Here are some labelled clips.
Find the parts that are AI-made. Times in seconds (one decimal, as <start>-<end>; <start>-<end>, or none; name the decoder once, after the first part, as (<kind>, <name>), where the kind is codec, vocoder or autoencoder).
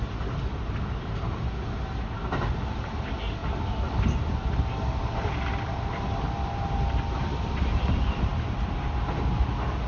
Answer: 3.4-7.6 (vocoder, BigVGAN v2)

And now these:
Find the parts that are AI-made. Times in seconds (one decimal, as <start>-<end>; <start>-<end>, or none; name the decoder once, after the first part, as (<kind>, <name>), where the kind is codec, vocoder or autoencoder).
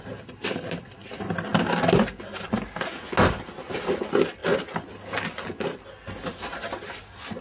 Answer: none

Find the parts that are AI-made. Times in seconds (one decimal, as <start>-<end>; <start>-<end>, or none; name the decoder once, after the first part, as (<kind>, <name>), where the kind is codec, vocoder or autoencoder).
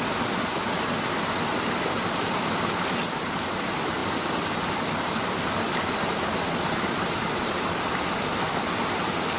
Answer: none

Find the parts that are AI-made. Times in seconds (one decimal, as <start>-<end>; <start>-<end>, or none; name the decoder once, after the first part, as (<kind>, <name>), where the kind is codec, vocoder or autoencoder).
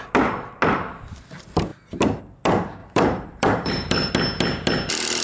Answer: 2.8-4.1 (vocoder, BigVGAN v2)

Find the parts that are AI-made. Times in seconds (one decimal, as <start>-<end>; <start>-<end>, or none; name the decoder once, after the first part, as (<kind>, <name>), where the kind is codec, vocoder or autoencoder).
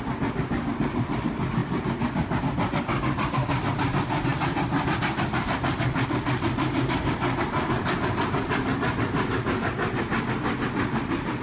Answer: 1.6-2.4 (vocoder, BigVGAN v2)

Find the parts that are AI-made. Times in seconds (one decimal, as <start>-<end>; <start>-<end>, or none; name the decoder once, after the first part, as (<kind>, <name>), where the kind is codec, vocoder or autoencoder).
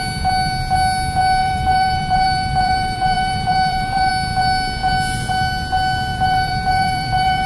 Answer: 1.4-4.1 (vocoder, BigVGAN v2); 6.1-7.5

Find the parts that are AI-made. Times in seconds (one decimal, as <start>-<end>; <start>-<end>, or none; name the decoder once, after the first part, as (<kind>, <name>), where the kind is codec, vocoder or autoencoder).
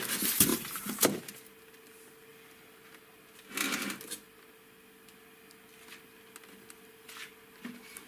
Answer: 0.5-1.2 (vocoder, BigVGAN v2)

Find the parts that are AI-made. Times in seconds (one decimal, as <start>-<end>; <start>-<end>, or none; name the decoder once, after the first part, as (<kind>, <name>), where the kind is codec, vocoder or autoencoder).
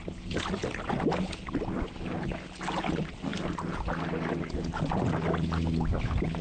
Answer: none